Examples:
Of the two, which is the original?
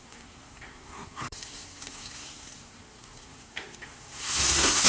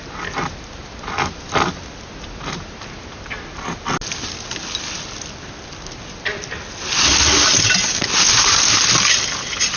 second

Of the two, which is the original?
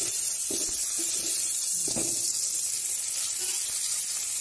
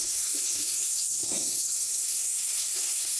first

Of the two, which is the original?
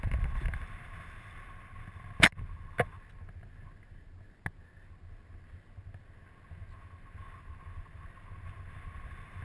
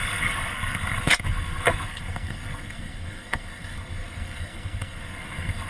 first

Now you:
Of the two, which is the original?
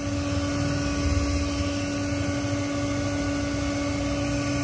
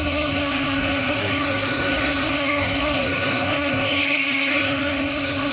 first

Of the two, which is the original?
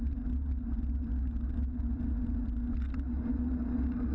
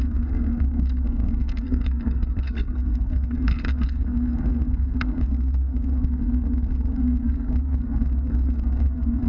first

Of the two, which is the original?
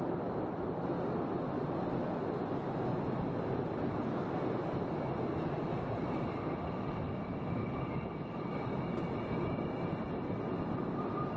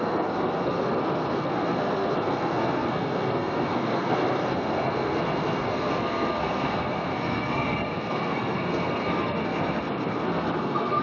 first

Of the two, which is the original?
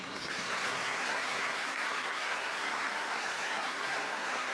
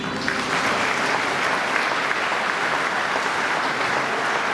second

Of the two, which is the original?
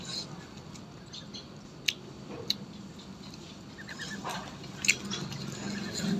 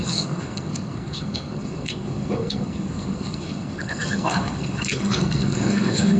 first